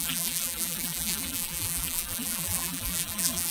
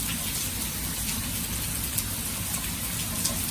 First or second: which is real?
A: second